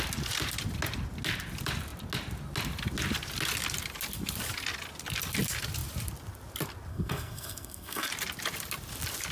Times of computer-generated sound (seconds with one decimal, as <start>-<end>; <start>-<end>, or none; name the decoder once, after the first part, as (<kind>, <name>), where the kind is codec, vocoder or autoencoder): 6.9-8.1 (codec, SNAC)

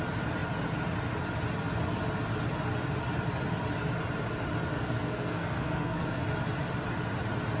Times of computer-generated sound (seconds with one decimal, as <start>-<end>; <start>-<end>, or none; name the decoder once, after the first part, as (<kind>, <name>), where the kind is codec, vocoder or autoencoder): 4.7-6.2 (codec, SNAC)

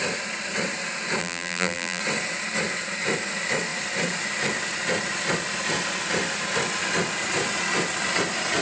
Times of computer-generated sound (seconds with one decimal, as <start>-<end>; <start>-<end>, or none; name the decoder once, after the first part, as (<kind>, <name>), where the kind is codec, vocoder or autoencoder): 1.2-2.0 (vocoder, BigVGAN v2)

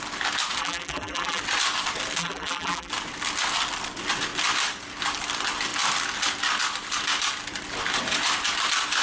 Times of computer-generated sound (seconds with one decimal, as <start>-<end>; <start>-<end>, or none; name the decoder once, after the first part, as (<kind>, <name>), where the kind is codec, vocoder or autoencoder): 0.6-1.4 (vocoder, BigVGAN v2); 2.2-2.9

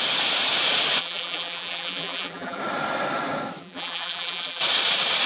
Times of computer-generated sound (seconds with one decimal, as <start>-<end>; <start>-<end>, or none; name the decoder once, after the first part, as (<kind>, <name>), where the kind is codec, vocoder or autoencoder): 1.0-2.6 (vocoder, BigVGAN v2); 3.6-4.6